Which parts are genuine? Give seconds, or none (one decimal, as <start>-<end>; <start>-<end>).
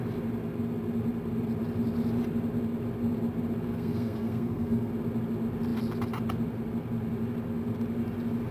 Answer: 0.0-3.7; 4.9-8.5